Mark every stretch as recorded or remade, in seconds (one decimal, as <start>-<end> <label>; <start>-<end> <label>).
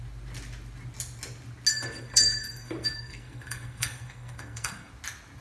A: 0.0-1.7 recorded; 1.7-4.9 remade; 4.9-5.4 recorded